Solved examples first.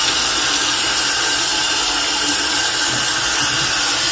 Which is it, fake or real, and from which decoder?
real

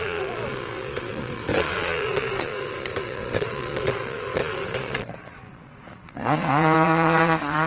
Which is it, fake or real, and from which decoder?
fake, vocoder, Vocos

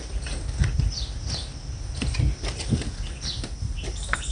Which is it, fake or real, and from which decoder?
real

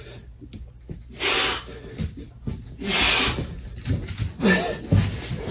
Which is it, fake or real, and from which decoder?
real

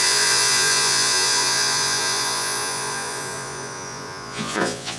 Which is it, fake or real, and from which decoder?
fake, vocoder, Vocos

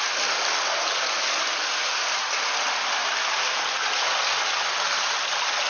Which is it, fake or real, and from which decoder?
real